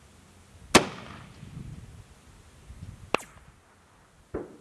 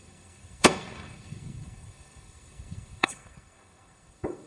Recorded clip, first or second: first